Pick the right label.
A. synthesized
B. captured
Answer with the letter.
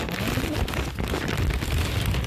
B